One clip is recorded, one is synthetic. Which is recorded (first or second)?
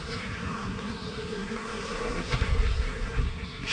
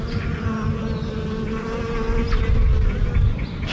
second